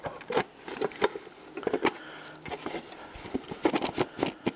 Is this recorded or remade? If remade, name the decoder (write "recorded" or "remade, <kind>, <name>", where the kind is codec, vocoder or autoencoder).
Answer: recorded